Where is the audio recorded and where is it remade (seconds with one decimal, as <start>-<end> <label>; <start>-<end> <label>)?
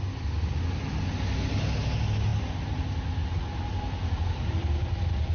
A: 0.0-5.3 recorded